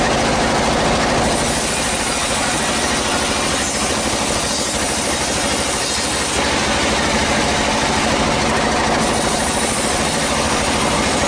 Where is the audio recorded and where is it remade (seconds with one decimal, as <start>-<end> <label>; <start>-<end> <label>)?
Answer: 0.0-11.3 recorded